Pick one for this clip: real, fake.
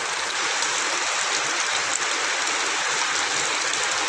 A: real